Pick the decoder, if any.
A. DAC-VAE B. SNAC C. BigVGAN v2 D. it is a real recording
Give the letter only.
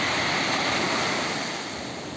C